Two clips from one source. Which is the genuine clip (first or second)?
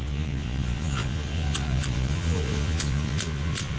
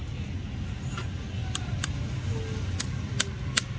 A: second